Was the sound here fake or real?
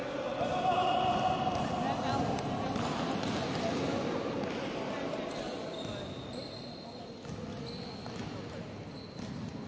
real